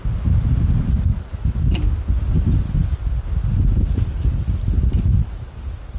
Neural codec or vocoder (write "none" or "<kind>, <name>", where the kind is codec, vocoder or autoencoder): none